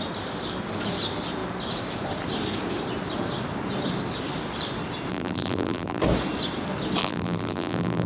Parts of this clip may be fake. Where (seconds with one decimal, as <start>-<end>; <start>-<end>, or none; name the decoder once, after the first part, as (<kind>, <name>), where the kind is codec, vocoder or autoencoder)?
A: 5.1-6.0 (vocoder, BigVGAN v2); 7.0-8.1